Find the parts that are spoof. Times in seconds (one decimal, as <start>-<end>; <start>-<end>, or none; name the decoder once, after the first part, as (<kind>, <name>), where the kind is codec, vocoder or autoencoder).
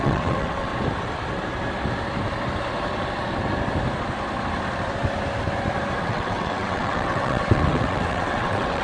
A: 0.0-0.7 (vocoder, WaveNeXt); 6.0-8.8